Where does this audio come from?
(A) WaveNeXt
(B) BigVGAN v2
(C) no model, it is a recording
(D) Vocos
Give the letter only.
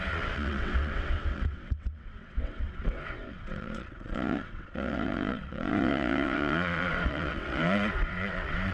A